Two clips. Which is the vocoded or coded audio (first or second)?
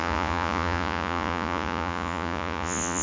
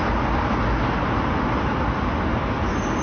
first